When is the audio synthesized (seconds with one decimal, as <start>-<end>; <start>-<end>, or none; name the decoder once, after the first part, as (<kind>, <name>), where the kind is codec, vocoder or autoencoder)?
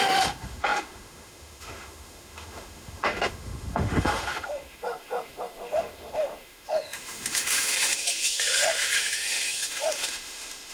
0.0-10.7 (autoencoder, DAC-VAE)